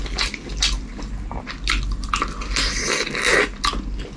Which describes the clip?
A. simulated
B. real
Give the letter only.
B